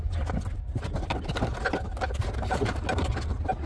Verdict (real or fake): real